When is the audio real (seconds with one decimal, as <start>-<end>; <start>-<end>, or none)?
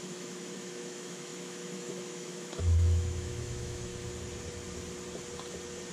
3.9-5.9